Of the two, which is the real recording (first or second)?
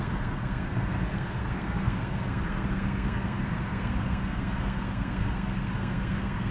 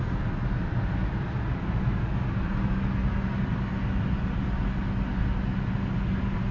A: second